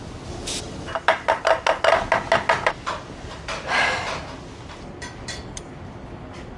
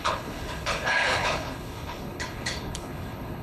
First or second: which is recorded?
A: first